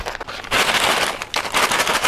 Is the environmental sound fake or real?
real